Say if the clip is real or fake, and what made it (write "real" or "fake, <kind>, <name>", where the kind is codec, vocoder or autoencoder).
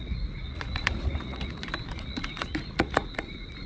fake, vocoder, Vocos